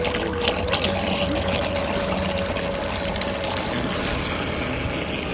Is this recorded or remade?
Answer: recorded